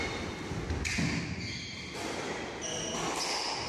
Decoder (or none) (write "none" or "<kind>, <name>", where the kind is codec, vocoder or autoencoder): none